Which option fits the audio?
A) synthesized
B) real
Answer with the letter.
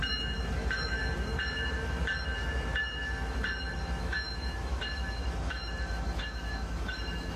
A